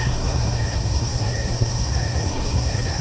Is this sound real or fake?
fake